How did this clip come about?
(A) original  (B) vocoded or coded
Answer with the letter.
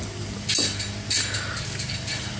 A